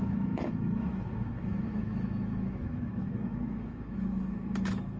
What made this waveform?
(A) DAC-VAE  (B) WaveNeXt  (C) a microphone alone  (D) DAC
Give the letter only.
A